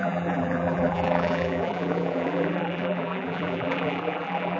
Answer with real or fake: fake